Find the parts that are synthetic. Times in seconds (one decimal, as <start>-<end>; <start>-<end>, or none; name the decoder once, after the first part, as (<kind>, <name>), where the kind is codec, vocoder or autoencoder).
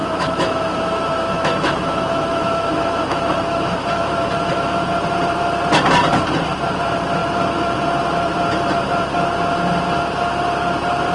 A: 0.0-4.9 (autoencoder, DAC-VAE)